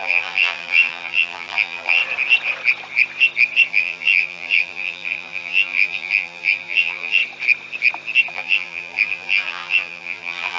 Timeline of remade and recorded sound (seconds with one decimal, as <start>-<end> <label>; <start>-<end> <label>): 0.0-2.0 remade; 2.0-3.7 recorded; 3.7-7.2 remade; 7.2-8.3 recorded; 8.3-10.6 remade